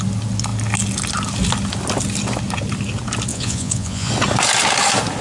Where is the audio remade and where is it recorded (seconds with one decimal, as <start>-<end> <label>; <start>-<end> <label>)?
0.0-3.3 recorded; 3.3-4.1 remade; 4.1-5.2 recorded